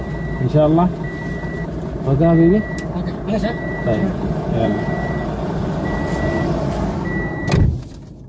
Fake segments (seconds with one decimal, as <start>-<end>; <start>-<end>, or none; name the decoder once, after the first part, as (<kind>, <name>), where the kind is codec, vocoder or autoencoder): none